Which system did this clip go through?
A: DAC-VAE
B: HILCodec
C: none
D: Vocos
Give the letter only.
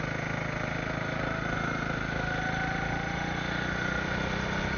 C